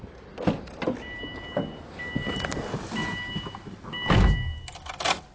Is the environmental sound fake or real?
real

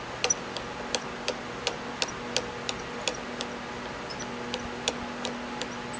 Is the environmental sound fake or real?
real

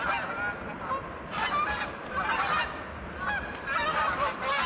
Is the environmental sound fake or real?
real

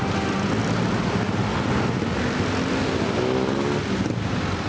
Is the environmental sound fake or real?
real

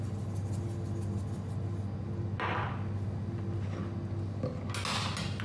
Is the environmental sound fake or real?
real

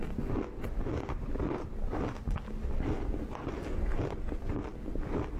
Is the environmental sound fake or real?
real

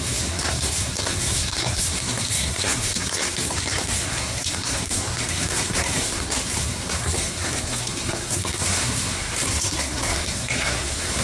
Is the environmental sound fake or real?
fake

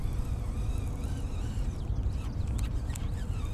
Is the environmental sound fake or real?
real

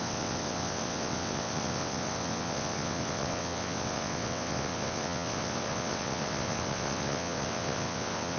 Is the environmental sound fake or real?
fake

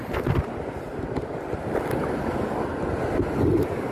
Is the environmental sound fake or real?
real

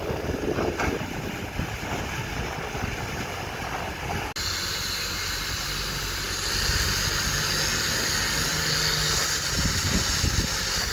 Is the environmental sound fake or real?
real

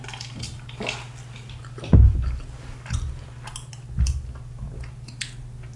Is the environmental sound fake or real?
real